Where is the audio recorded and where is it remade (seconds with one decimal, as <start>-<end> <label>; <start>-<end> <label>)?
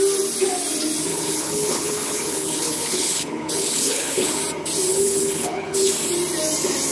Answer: 0.0-1.1 recorded; 1.1-4.4 remade; 4.4-4.9 recorded; 4.9-5.9 remade; 5.9-6.9 recorded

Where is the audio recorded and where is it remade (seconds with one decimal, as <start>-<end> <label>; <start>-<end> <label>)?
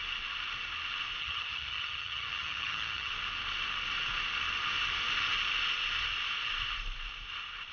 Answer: 0.0-1.2 recorded; 1.2-3.1 remade; 3.1-7.7 recorded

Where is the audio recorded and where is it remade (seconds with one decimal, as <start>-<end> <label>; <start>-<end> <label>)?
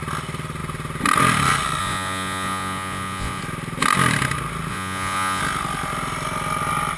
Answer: 0.0-1.8 recorded; 1.8-3.4 remade; 3.4-4.7 recorded; 4.7-5.4 remade; 5.4-7.0 recorded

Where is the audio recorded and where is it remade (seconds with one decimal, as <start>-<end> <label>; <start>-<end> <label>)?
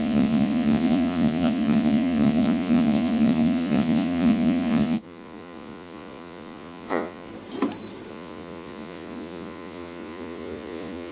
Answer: 0.0-7.3 remade; 7.3-8.1 recorded; 8.1-11.1 remade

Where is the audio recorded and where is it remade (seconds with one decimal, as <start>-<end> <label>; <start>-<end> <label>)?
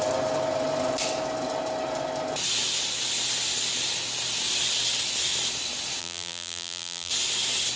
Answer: 0.0-6.0 recorded; 6.0-7.1 remade; 7.1-7.8 recorded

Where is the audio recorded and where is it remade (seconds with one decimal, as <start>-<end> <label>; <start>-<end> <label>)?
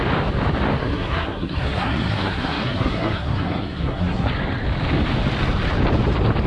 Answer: 0.0-0.8 recorded; 0.8-4.3 remade; 4.3-6.5 recorded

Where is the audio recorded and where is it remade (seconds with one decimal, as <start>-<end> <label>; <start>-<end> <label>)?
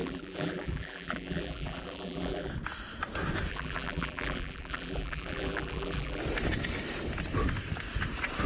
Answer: 0.0-2.5 remade; 2.5-3.5 recorded; 3.5-6.2 remade; 6.2-8.5 recorded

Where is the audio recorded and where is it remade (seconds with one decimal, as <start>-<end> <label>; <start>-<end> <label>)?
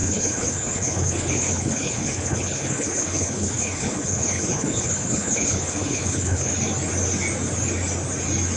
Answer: 0.0-6.5 remade; 6.5-8.6 recorded